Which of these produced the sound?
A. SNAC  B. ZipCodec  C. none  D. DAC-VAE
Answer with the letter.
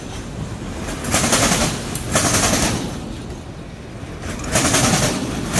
C